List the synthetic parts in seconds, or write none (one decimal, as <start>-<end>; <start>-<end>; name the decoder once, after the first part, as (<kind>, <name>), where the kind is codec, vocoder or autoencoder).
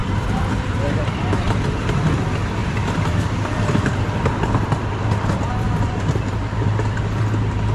0.0-1.6 (vocoder, BigVGAN v2); 2.6-7.2